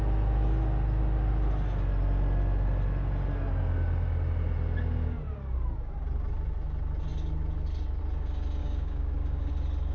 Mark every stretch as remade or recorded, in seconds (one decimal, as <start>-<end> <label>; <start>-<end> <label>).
0.0-8.6 recorded; 8.6-9.5 remade; 9.5-9.9 recorded